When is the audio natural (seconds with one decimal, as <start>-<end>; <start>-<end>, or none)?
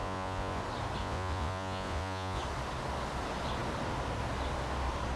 0.6-1.0; 2.4-5.2